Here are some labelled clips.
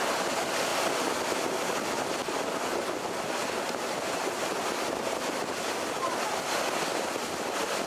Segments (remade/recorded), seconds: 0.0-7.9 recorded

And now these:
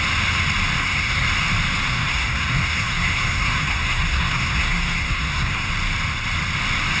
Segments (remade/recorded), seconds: 0.0-0.8 recorded; 0.8-1.3 remade; 1.3-1.9 recorded; 1.9-5.7 remade; 5.7-7.0 recorded